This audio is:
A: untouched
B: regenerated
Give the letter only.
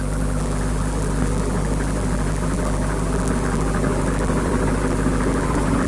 B